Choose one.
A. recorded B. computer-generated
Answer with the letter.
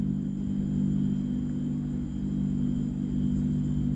A